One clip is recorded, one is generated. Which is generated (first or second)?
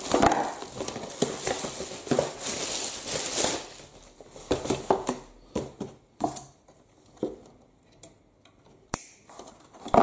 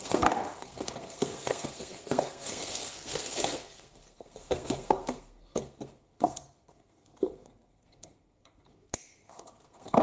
second